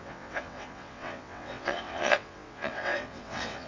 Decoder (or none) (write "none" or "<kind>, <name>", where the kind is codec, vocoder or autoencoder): vocoder, WaveNeXt